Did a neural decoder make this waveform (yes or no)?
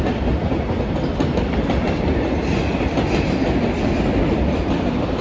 no